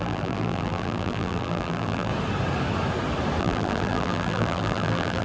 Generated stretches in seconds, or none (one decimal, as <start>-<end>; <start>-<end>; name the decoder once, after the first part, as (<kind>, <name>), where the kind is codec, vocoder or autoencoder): 0.0-2.1 (vocoder, BigVGAN v2); 3.4-5.2